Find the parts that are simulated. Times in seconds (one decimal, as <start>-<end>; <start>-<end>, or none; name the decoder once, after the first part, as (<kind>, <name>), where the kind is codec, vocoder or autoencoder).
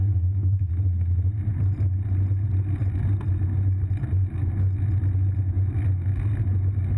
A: 0.0-0.7 (codec, SNAC)